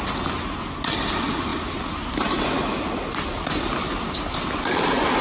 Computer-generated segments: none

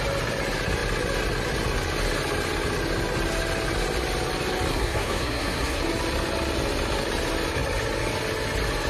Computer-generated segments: 4.7-5.8 (codec, SNAC)

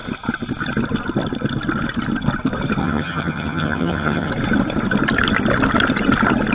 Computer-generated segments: 2.8-4.3 (vocoder, HiFi-GAN)